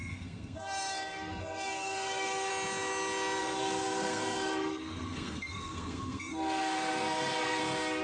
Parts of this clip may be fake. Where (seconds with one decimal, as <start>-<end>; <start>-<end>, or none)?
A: 0.0-2.5; 3.4-7.6